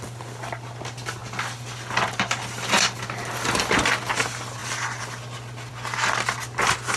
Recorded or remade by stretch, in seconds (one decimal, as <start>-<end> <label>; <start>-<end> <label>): 0.0-7.0 recorded